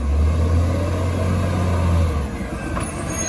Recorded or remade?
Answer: recorded